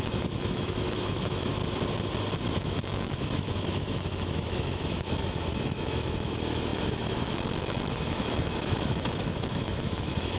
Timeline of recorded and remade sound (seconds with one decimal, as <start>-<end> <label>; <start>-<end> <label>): 0.0-1.6 remade; 1.6-2.5 recorded; 2.5-10.4 remade